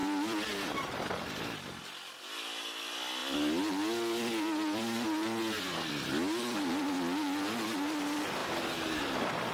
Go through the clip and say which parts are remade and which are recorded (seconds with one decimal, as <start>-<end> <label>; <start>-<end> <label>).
0.0-1.3 remade; 1.3-3.2 recorded; 3.2-5.9 remade; 5.9-9.5 recorded